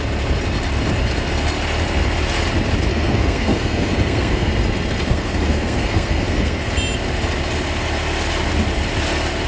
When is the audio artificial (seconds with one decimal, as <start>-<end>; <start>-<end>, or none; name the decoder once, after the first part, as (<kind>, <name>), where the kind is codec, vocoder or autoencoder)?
2.9-4.5 (codec, SNAC); 5.1-6.7